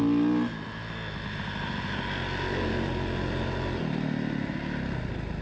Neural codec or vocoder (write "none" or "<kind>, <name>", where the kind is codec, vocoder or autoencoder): none